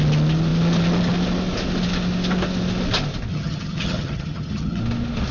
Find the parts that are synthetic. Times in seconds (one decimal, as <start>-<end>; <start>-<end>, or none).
3.3-4.8